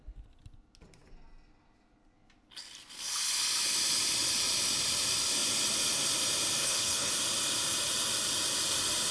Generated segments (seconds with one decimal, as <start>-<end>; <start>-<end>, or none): 6.6-7.1